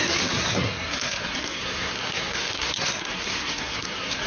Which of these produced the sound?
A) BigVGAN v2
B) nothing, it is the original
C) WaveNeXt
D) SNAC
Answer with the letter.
D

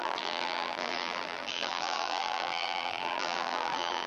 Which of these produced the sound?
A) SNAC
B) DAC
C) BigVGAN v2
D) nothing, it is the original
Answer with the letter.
C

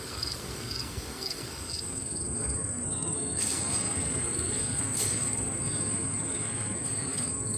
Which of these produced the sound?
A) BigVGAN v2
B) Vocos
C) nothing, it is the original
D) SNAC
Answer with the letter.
D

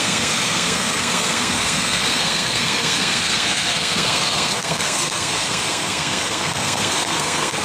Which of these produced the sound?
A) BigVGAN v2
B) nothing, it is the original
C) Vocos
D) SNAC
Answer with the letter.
D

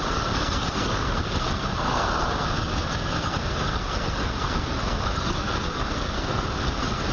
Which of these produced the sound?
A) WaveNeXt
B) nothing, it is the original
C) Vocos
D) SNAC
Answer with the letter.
D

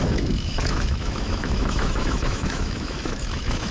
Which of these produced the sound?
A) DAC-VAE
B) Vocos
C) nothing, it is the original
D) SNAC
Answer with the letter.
A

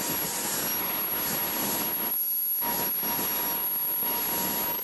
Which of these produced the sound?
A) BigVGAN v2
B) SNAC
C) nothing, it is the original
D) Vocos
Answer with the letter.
C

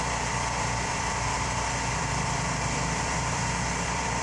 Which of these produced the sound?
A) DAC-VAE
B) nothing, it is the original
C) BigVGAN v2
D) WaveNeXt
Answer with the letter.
C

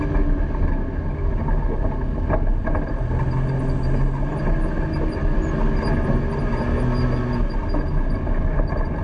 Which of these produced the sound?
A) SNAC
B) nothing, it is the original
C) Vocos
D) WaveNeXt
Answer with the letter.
B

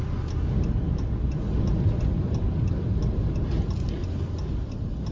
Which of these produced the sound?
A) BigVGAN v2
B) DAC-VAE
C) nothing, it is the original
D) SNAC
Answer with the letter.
C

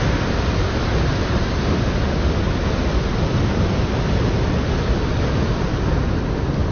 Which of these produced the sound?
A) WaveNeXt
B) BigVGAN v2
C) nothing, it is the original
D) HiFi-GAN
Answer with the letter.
C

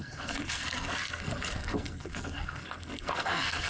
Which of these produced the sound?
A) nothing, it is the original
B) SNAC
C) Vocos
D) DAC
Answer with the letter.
B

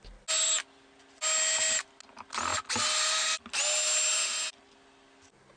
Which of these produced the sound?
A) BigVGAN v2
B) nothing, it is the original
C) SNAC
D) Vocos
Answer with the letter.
B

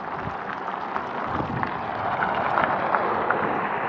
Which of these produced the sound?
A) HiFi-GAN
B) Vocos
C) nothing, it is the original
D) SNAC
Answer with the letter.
C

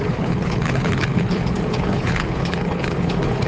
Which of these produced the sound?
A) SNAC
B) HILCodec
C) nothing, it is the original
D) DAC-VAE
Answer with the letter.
B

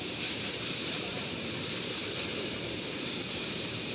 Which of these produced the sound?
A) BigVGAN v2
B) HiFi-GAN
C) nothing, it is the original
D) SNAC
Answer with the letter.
A